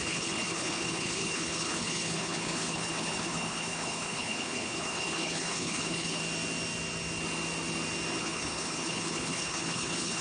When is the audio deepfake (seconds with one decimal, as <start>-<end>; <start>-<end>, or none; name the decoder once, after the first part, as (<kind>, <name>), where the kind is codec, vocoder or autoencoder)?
0.0-6.2 (codec, HILCodec); 8.2-10.2